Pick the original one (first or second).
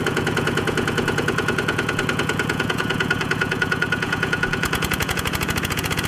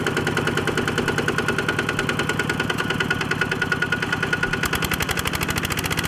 second